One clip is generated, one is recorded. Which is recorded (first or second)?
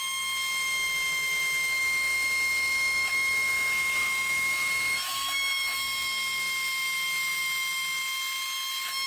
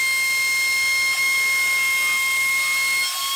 second